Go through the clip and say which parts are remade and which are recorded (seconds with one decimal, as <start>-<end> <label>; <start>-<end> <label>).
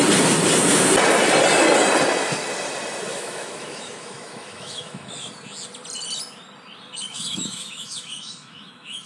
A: 0.0-3.1 recorded; 3.1-5.1 remade; 5.1-7.1 recorded; 7.1-9.1 remade